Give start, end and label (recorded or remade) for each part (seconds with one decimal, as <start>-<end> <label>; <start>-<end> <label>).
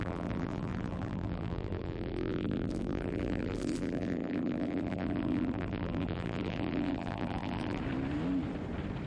0.0-7.8 remade; 7.8-9.1 recorded